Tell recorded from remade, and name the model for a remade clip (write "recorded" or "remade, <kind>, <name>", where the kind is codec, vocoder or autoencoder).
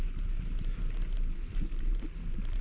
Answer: recorded